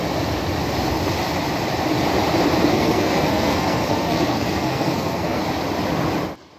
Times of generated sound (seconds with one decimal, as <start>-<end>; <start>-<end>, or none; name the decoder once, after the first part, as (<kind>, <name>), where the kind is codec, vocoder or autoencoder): 2.7-5.4 (codec, SNAC)